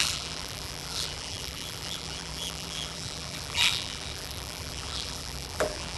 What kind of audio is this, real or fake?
fake